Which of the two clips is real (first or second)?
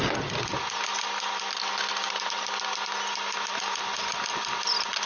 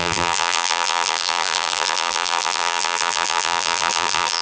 first